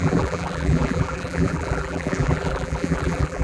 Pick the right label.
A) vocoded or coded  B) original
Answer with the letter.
A